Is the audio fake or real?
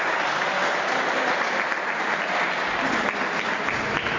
real